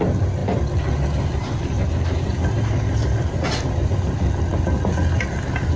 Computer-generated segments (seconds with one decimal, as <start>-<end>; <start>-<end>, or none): none